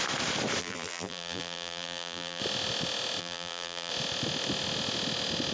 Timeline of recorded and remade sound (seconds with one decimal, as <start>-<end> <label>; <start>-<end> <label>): 0.0-0.6 recorded; 0.6-2.4 remade; 2.4-3.2 recorded; 3.2-3.9 remade; 3.9-5.5 recorded